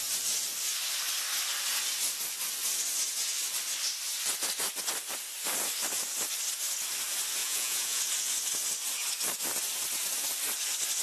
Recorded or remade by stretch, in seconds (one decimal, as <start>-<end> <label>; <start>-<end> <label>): 0.0-7.4 recorded; 7.4-8.0 remade; 8.0-11.0 recorded